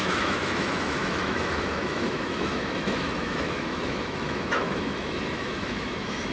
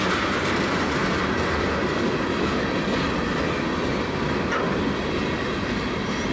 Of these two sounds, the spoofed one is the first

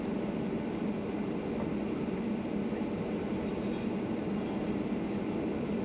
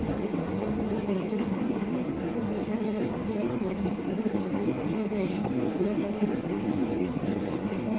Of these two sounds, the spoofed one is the second